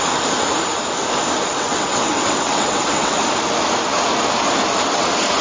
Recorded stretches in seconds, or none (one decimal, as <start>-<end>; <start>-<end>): 0.0-1.5; 3.2-5.4